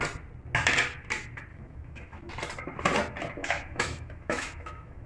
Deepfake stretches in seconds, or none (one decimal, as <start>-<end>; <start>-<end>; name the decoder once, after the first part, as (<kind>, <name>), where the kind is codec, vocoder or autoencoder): 1.5-2.3 (autoencoder, DAC-VAE); 3.4-5.1